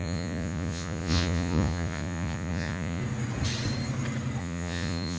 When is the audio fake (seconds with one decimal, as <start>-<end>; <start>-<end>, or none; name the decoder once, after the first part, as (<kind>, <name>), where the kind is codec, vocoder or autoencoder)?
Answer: 0.0-3.0 (vocoder, Vocos); 4.4-5.2